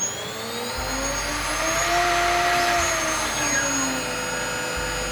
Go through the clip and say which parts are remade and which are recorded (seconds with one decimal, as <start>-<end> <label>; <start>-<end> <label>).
0.0-1.3 recorded; 1.3-3.3 remade; 3.3-5.1 recorded